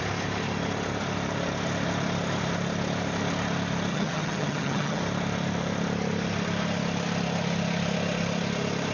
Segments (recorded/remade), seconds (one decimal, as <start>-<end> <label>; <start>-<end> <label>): 0.0-3.9 recorded; 3.9-5.0 remade; 5.0-8.9 recorded